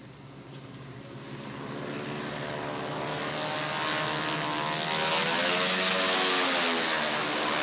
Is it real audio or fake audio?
real